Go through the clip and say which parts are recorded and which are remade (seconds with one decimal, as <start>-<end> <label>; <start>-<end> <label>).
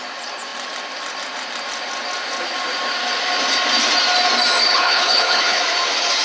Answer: 0.0-4.7 recorded; 4.7-5.6 remade; 5.6-6.2 recorded